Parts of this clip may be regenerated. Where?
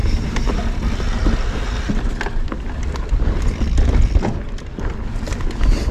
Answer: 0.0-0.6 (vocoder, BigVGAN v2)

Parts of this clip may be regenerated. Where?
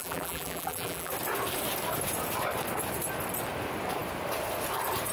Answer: 0.0-1.1 (vocoder, BigVGAN v2)